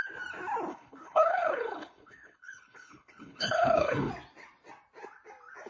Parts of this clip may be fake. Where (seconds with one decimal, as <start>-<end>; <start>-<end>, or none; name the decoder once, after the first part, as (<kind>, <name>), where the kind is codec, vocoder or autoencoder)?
0.7-4.1 (codec, HILCodec)